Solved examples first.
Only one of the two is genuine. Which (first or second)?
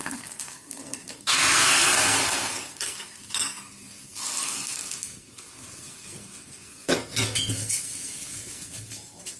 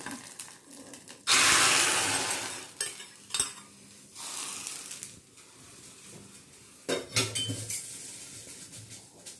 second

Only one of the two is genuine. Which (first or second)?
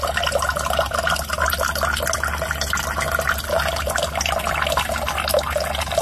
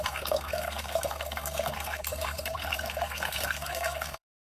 first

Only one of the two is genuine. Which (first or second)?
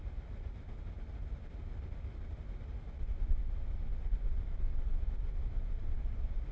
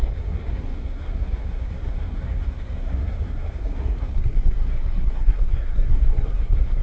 first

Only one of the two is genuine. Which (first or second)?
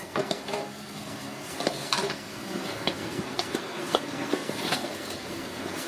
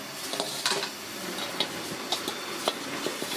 second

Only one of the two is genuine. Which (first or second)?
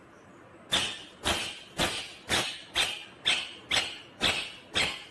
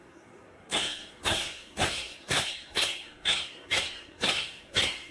first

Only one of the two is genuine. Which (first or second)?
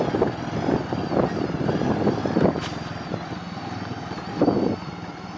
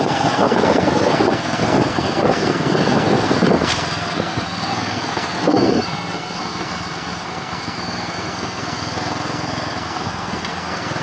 first